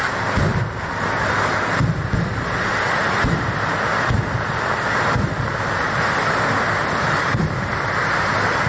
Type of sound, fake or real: real